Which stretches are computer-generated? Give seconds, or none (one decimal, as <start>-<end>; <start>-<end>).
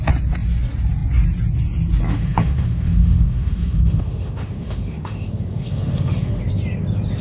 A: 2.1-6.4